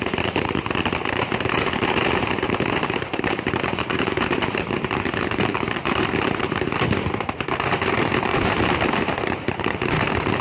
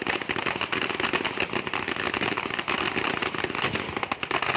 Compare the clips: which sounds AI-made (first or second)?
first